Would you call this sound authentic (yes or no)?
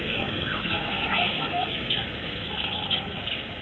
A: no